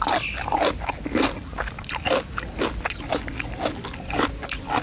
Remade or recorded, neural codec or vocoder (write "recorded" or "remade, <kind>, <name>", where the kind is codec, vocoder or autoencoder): recorded